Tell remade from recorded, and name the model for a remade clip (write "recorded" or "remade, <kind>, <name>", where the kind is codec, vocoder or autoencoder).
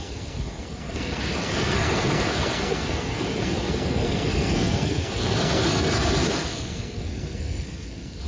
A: remade, codec, SNAC